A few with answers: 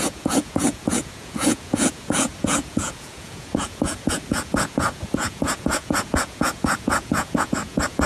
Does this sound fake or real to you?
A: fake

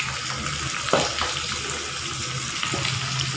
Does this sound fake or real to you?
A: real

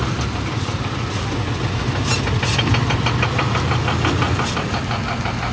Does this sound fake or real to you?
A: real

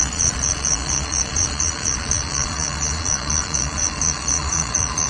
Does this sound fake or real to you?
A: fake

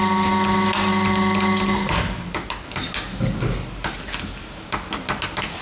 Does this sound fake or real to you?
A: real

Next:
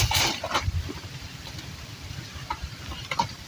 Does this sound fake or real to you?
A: real